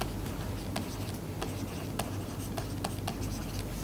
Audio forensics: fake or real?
real